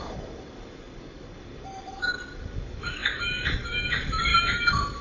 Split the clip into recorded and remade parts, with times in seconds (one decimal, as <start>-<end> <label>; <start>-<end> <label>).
0.0-5.0 remade

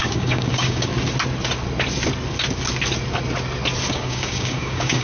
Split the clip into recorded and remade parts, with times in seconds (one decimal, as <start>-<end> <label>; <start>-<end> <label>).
0.0-0.9 remade; 0.9-3.9 recorded; 3.9-5.0 remade

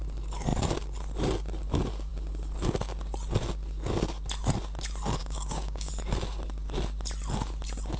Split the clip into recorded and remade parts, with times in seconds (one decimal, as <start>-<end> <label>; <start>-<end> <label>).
0.0-5.2 recorded; 5.2-5.9 remade; 5.9-8.0 recorded

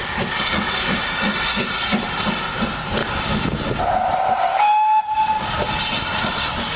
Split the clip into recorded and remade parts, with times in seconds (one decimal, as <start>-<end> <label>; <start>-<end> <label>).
0.0-3.0 recorded; 3.0-3.8 remade; 3.8-4.5 recorded; 4.5-5.5 remade; 5.5-6.8 recorded

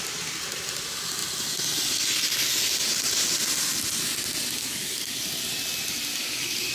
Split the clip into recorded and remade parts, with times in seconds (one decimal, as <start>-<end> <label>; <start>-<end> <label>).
0.0-4.6 recorded; 4.6-5.2 remade; 5.2-6.1 recorded; 6.1-6.7 remade

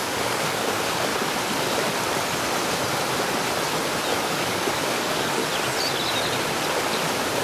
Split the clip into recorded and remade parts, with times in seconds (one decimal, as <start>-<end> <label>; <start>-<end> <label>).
0.0-1.1 remade; 1.1-4.2 recorded; 4.2-5.4 remade; 5.4-7.4 recorded

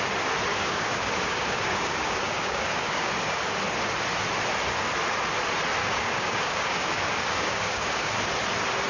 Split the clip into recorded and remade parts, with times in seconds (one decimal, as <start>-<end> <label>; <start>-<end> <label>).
0.0-0.5 recorded; 0.5-3.1 remade; 3.1-5.8 recorded; 5.8-8.1 remade; 8.1-8.9 recorded

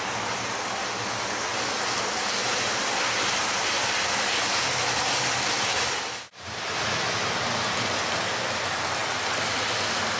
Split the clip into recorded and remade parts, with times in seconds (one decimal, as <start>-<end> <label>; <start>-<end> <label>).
0.0-10.2 recorded